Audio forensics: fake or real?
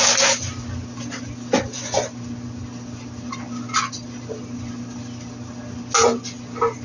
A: real